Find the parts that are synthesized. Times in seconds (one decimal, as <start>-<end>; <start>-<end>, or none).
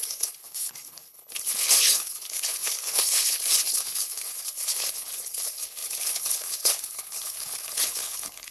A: 0.0-8.5